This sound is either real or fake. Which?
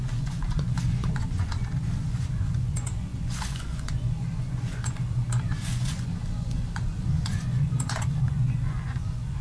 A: fake